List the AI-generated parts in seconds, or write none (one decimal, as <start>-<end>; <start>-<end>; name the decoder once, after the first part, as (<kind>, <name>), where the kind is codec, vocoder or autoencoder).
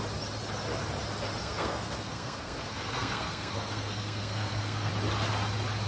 1.4-4.9 (codec, SNAC)